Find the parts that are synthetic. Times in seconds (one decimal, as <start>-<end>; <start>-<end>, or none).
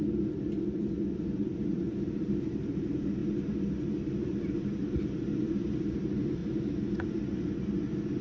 0.0-3.2; 3.9-6.4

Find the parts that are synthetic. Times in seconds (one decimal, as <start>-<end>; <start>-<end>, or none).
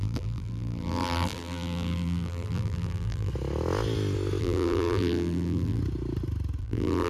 0.0-3.3; 4.4-5.8; 6.6-7.1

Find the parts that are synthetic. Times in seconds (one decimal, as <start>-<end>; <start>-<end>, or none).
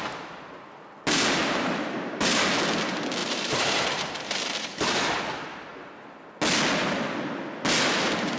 1.4-2.4; 3.2-5.2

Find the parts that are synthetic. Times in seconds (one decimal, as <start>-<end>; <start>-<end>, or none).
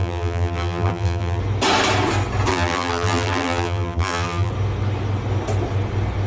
0.0-1.4; 2.5-4.5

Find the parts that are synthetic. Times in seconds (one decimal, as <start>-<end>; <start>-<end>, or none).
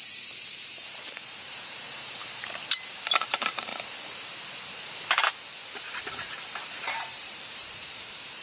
0.0-2.2; 2.9-3.7; 6.0-8.4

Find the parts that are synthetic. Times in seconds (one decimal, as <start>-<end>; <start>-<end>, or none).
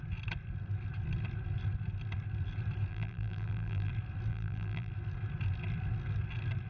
2.9-3.9; 4.3-4.9